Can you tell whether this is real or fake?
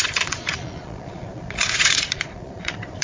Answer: fake